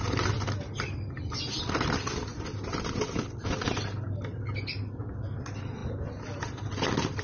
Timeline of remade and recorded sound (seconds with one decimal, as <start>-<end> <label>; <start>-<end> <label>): 0.0-7.2 recorded